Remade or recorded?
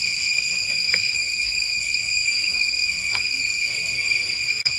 remade